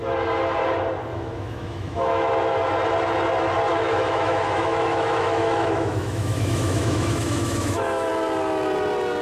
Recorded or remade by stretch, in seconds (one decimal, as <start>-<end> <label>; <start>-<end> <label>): 0.0-1.1 recorded; 1.1-2.3 remade; 2.3-3.7 recorded; 3.7-8.1 remade; 8.1-9.2 recorded